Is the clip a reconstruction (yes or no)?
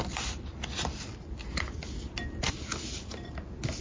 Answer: no